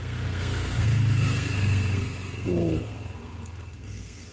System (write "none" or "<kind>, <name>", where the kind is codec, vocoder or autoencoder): codec, SNAC